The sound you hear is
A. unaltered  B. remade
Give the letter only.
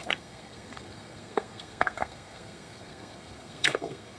B